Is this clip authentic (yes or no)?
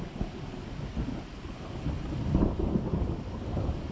yes